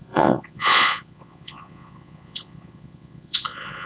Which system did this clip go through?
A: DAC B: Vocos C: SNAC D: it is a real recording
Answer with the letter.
B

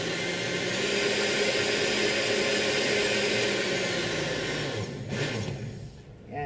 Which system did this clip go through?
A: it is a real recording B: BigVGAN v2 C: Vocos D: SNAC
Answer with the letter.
A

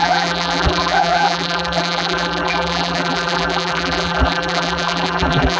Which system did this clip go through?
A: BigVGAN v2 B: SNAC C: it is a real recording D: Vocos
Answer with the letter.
A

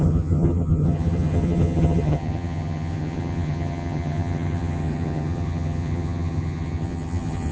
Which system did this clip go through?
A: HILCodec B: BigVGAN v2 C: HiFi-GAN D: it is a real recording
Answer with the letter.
C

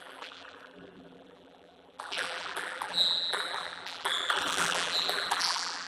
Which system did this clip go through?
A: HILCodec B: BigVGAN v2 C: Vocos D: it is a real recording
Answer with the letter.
B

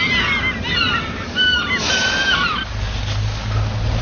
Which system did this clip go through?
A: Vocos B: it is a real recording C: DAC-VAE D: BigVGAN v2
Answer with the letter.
B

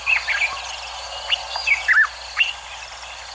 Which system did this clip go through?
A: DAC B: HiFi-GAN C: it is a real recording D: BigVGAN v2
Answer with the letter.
C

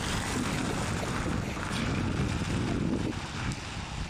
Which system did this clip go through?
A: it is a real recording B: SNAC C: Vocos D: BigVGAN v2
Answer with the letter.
A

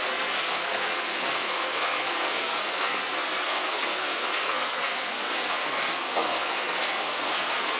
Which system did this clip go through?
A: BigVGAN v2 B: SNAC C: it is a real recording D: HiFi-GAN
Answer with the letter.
B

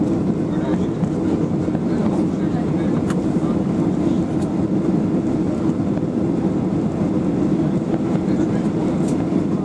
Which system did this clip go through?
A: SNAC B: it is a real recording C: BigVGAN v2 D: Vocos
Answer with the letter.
B